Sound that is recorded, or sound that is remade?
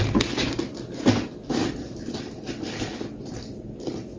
recorded